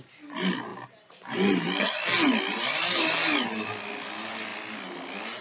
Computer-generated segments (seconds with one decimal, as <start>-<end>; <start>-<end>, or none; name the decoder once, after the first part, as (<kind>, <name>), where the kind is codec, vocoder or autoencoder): none